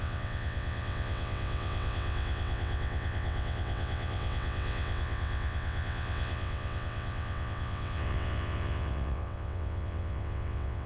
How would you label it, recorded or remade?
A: remade